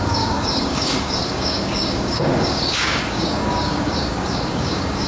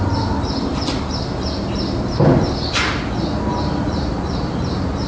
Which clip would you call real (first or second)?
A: second